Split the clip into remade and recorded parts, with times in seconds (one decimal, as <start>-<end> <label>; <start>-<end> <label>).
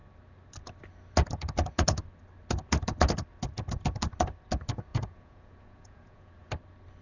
0.0-4.9 recorded; 4.9-6.5 remade; 6.5-7.0 recorded